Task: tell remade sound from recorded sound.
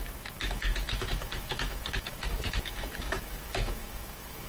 remade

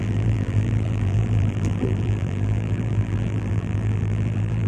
remade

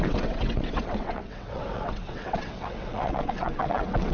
remade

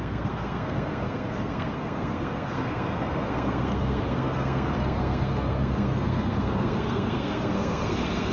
remade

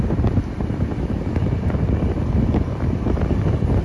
recorded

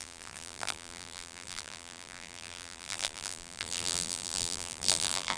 remade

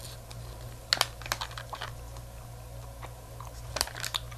recorded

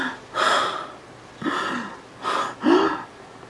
recorded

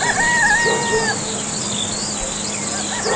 recorded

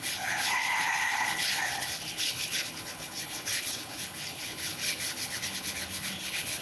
remade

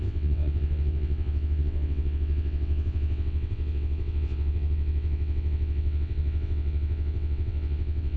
remade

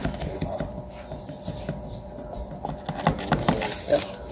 recorded